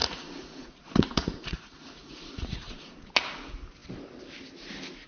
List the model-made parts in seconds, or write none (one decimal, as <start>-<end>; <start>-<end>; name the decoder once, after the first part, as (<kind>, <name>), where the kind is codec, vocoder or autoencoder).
0.0-3.1 (vocoder, Vocos)